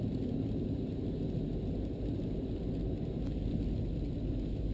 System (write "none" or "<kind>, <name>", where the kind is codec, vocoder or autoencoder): none